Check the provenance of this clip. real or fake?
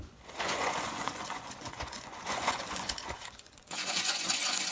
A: fake